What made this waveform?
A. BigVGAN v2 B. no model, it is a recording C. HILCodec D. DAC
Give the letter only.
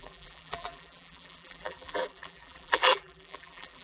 A